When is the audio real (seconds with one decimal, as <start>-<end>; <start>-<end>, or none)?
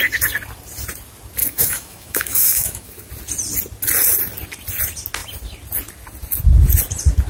0.0-1.4; 3.1-7.3